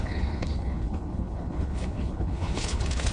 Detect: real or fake fake